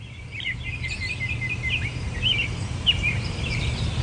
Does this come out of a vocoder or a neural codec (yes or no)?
yes